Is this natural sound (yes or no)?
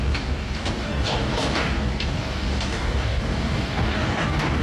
no